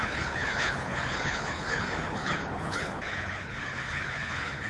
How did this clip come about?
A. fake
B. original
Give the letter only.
A